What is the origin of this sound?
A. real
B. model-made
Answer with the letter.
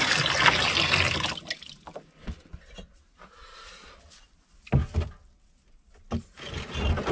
A